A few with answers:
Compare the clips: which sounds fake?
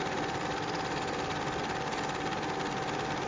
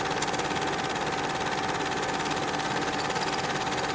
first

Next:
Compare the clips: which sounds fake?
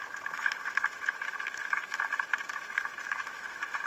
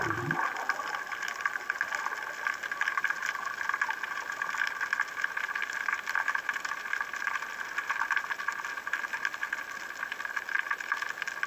first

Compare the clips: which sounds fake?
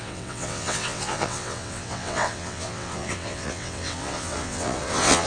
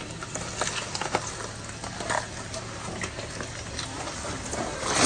first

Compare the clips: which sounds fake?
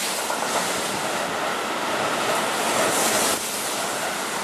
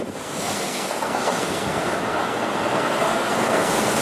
second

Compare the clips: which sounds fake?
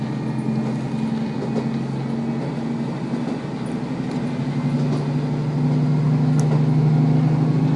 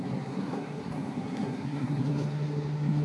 second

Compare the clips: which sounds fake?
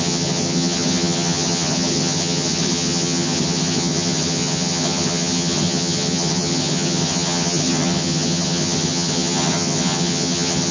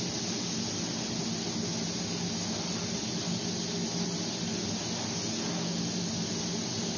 first